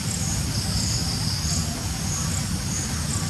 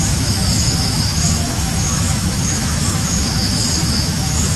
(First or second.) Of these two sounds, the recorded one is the first